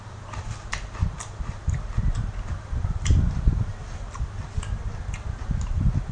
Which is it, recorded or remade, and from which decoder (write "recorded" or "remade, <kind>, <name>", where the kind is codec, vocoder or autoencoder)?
remade, vocoder, BigVGAN v2